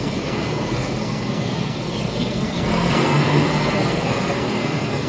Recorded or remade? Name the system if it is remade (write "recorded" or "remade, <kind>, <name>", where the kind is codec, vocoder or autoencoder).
remade, codec, SNAC